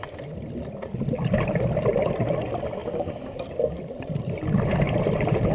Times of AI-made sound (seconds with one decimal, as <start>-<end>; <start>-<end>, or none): none